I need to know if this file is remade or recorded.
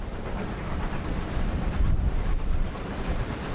remade